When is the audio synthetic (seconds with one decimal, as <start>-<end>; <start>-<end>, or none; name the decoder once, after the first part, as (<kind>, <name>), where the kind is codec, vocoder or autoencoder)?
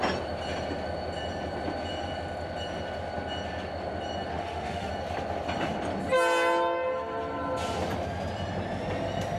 4.3-4.9 (autoencoder, DAC-VAE)